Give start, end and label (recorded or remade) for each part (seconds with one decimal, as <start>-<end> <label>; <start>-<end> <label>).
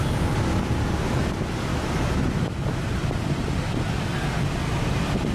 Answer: 0.0-1.7 recorded; 1.7-2.9 remade; 2.9-5.3 recorded